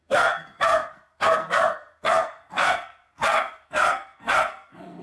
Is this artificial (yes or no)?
yes